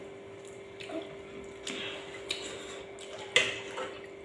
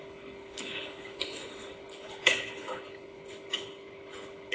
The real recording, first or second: first